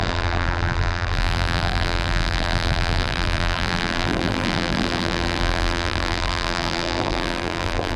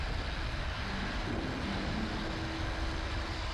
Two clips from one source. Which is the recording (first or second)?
second